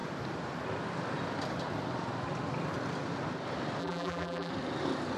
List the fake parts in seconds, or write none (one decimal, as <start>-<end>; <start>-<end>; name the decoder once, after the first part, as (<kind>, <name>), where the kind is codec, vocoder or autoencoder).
3.8-4.5 (vocoder, BigVGAN v2)